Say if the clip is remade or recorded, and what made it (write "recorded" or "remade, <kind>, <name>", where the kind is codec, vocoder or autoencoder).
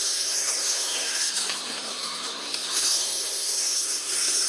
remade, codec, SNAC